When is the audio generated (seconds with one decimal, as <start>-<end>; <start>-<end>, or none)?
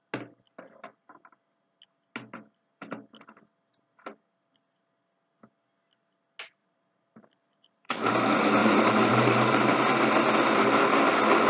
6.6-8.1; 8.6-10.3